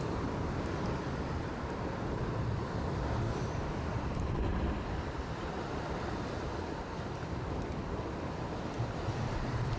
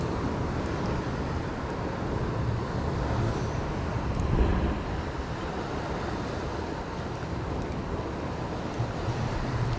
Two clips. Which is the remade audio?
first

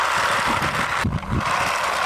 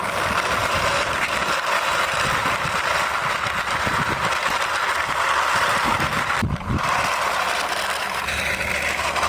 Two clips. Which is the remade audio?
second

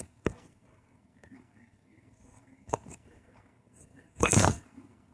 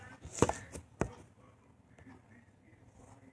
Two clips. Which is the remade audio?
first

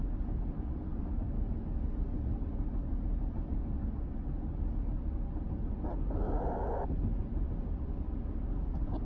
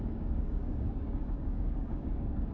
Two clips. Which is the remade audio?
second